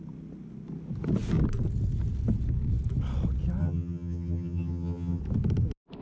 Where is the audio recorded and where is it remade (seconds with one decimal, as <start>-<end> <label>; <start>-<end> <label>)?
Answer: 0.0-3.6 recorded; 3.6-5.2 remade; 5.2-6.0 recorded